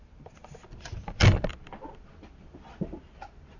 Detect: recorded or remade recorded